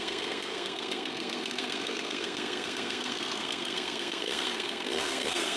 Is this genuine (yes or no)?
no